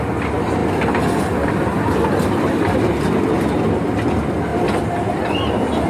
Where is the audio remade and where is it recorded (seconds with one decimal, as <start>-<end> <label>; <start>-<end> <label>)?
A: 0.0-0.6 recorded; 0.6-2.6 remade; 2.6-4.5 recorded; 4.5-5.2 remade; 5.2-5.9 recorded